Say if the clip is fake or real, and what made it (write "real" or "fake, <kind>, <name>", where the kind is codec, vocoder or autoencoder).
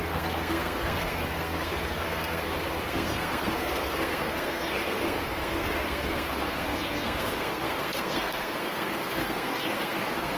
fake, codec, SNAC